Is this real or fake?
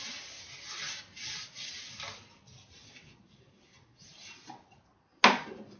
real